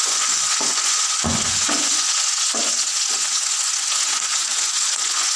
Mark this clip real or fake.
fake